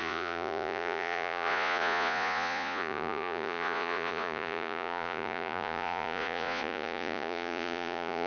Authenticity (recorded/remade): remade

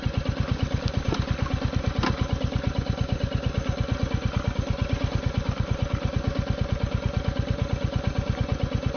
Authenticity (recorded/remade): recorded